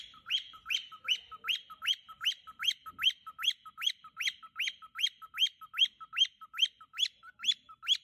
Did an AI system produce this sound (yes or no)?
no